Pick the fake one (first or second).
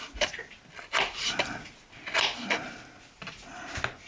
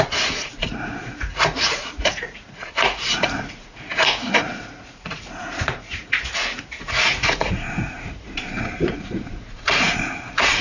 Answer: second